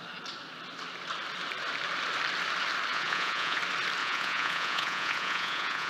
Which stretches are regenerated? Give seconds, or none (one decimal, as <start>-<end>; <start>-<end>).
2.9-3.6; 4.0-5.9